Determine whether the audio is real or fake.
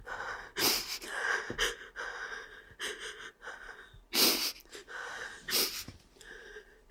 real